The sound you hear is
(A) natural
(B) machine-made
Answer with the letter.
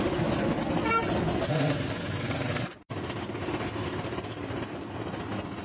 A